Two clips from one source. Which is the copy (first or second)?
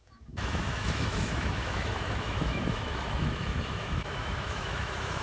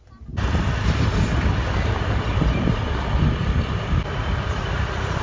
first